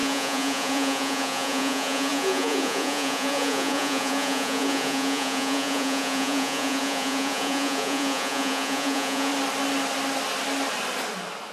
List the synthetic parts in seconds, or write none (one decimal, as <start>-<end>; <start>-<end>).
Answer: 0.0-9.3